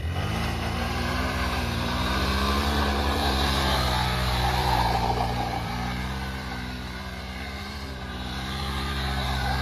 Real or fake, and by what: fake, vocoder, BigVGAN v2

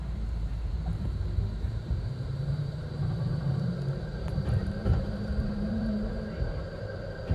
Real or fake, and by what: fake, vocoder, BigVGAN v2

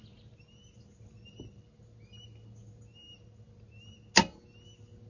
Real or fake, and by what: real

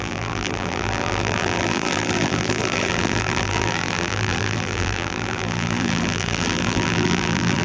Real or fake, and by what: fake, vocoder, BigVGAN v2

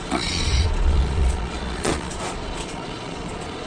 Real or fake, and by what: fake, vocoder, Vocos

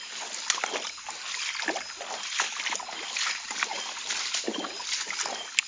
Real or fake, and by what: real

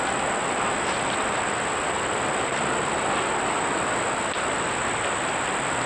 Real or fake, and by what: real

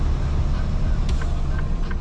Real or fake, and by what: real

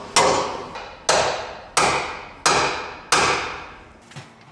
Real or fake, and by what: real